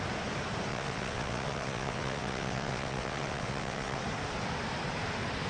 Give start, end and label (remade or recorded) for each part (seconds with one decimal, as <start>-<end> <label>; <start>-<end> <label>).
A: 0.0-0.7 recorded; 0.7-4.0 remade; 4.0-5.5 recorded